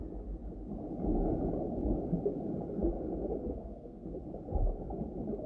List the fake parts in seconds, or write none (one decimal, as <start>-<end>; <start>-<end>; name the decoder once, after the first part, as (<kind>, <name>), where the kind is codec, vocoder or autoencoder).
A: 3.4-4.1 (codec, SNAC)

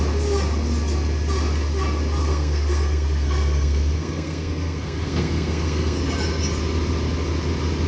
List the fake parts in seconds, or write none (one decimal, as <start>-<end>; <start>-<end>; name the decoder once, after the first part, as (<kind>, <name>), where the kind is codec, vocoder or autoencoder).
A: 2.2-6.0 (codec, SNAC)

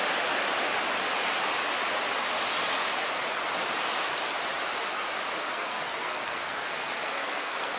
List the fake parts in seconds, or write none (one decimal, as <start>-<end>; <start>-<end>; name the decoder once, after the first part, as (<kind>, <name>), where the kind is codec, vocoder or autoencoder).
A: 5.4-7.8 (codec, SNAC)

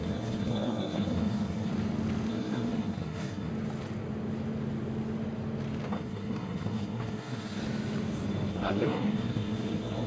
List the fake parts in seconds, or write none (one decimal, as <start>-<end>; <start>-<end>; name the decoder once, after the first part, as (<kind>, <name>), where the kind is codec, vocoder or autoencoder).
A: 0.0-1.7 (codec, SNAC); 2.3-3.5; 5.9-7.6; 8.5-10.1

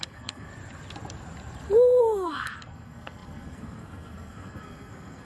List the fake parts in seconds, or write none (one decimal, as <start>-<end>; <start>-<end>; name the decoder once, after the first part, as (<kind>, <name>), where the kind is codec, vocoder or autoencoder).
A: 0.0-0.5 (codec, SNAC); 2.0-5.2